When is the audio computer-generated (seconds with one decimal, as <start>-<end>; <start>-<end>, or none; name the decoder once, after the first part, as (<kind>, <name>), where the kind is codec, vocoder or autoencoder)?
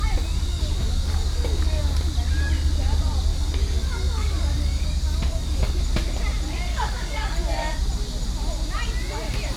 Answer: 0.5-1.8 (codec, DAC); 3.3-5.8; 6.7-7.8